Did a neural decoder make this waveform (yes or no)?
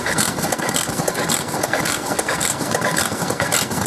yes